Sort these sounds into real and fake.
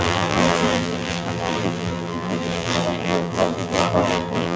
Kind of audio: fake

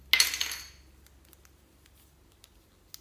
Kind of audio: real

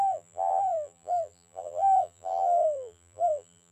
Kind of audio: fake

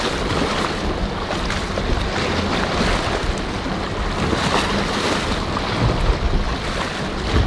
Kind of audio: real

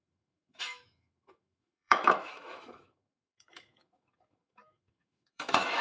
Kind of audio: fake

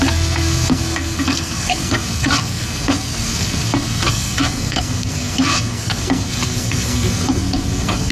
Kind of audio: fake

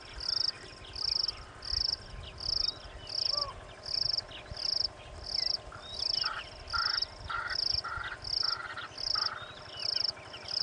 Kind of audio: real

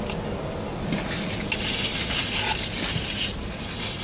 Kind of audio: real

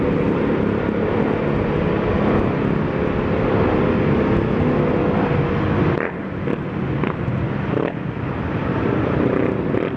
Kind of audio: real